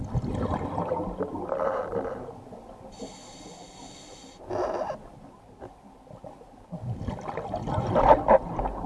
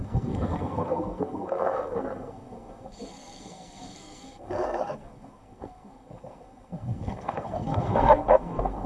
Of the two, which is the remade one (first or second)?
second